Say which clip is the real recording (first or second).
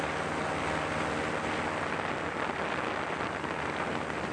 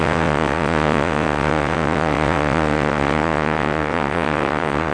first